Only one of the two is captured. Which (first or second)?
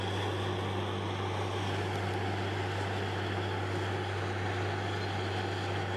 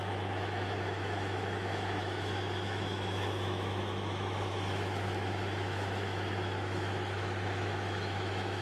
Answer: first